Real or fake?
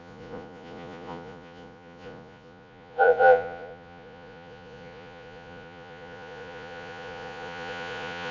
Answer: fake